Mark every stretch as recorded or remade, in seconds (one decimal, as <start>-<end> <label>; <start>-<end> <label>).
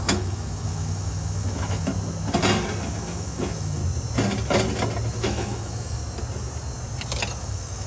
0.0-1.9 remade; 1.9-2.8 recorded; 2.8-3.8 remade; 3.8-5.1 recorded; 5.1-6.0 remade; 6.0-7.4 recorded; 7.4-7.9 remade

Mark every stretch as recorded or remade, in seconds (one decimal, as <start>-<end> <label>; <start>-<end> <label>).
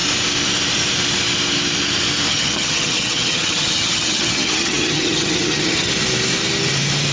0.0-2.3 recorded; 2.3-5.9 remade; 5.9-7.1 recorded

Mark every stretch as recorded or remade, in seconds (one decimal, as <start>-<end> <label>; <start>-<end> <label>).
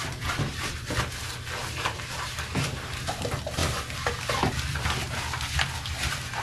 0.0-1.6 recorded; 1.6-3.1 remade; 3.1-6.4 recorded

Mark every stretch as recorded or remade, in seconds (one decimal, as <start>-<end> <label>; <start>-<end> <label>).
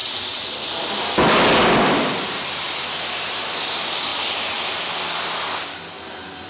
0.0-0.5 remade; 0.5-6.5 recorded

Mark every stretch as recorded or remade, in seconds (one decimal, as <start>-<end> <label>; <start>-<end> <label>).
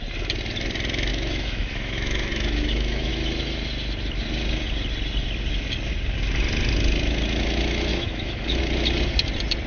0.0-1.1 recorded; 1.1-3.1 remade; 3.1-7.9 recorded; 7.9-8.6 remade; 8.6-9.7 recorded